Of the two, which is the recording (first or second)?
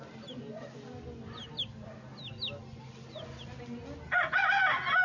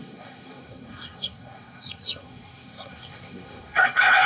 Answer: first